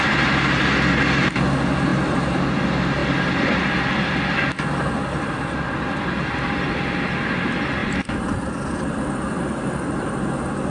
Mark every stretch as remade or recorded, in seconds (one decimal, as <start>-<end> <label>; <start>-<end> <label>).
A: 0.0-10.7 recorded